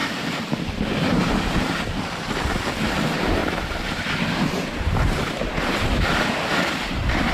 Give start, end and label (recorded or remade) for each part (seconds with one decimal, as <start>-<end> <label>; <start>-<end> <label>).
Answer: 0.0-2.7 remade; 2.7-3.4 recorded; 3.4-5.3 remade; 5.3-7.3 recorded